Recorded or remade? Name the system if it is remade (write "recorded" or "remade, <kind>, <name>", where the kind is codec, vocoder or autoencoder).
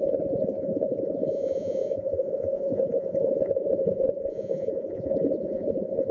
remade, vocoder, Vocos